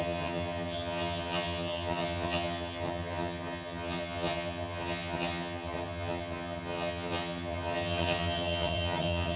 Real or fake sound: fake